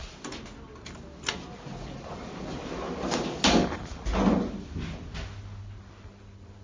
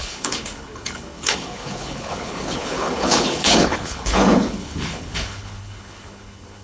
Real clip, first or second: first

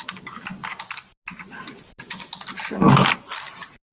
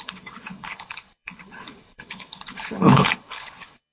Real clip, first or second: first